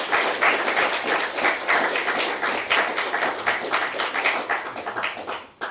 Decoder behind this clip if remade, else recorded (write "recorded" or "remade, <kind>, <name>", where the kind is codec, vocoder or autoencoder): recorded